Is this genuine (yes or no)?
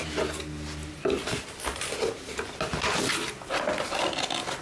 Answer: yes